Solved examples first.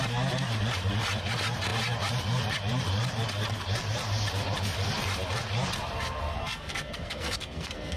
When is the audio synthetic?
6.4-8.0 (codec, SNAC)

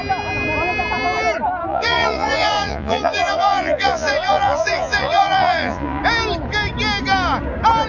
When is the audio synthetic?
1.7-6.0 (vocoder, Vocos)

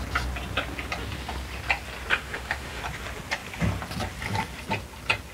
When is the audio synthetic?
2.1-2.8 (autoencoder, DAC-VAE)

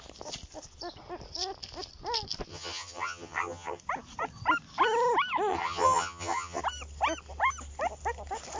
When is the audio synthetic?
2.5-3.8 (vocoder, HiFi-GAN); 5.5-6.6